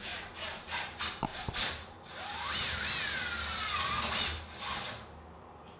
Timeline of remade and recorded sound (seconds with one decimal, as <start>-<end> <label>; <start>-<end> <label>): 0.0-5.8 recorded